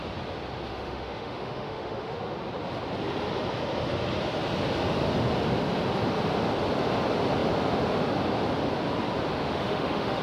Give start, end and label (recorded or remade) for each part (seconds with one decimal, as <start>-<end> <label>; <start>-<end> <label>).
0.0-0.7 recorded; 0.7-2.2 remade; 2.2-9.4 recorded; 9.4-10.2 remade